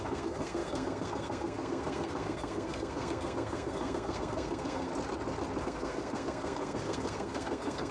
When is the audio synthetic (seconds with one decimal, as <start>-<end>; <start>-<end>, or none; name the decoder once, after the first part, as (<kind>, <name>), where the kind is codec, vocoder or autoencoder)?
0.0-4.9 (codec, SNAC); 5.6-7.9